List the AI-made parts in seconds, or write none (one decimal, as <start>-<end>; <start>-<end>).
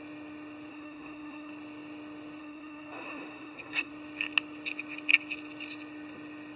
0.7-1.5; 2.4-3.9